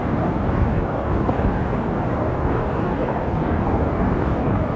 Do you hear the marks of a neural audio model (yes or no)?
yes